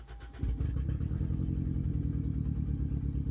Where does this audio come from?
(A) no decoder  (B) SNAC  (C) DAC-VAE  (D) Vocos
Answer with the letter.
A